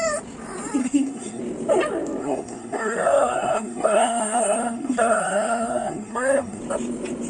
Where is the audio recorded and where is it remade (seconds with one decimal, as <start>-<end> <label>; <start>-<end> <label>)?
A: 0.0-0.8 recorded; 0.8-1.4 remade; 1.4-2.2 recorded; 2.2-6.6 remade; 6.6-7.3 recorded